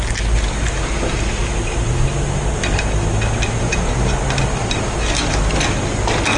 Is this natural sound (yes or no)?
yes